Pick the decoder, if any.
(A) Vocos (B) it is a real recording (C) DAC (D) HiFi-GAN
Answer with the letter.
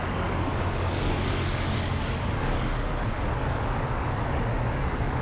C